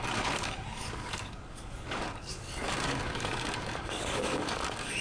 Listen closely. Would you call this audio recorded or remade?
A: remade